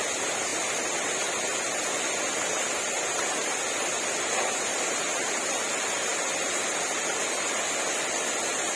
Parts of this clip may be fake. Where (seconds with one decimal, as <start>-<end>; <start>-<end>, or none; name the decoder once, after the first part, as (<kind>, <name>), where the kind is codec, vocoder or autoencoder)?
none